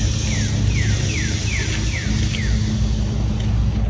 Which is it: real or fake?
real